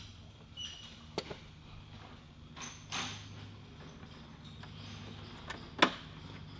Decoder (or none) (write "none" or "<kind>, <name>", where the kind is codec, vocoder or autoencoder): none